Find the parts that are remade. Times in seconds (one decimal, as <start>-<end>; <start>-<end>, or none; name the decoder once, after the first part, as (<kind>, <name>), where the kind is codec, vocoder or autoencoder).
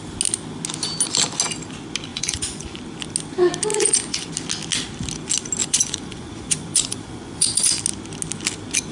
2.1-2.8 (vocoder, Vocos); 3.7-4.3; 5.6-7.8